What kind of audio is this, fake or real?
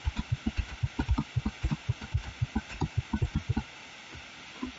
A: real